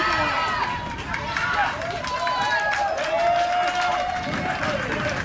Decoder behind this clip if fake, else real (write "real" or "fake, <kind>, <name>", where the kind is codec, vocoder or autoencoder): real